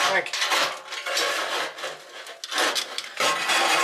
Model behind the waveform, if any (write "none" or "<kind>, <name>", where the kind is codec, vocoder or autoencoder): none